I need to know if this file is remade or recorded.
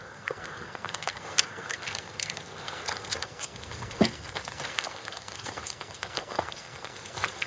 remade